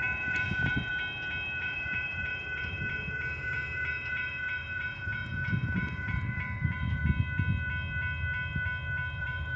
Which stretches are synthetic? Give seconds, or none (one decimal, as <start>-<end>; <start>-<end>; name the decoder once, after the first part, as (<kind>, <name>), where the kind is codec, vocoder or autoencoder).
0.0-0.9 (vocoder, Vocos); 1.6-7.0; 9.2-9.6